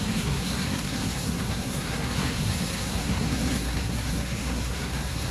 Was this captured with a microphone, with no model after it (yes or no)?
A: no